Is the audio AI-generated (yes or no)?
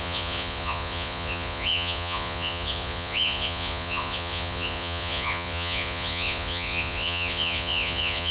yes